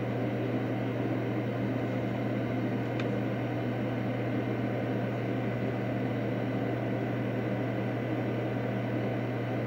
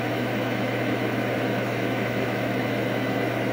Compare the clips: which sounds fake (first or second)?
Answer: second